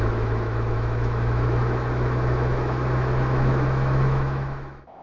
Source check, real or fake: fake